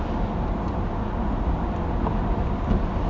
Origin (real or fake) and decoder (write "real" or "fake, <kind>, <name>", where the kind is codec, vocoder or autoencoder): real